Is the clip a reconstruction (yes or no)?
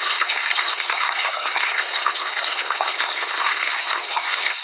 yes